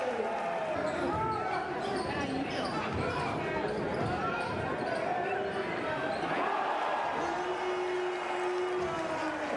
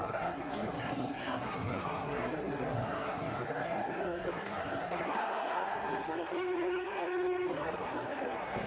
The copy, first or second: second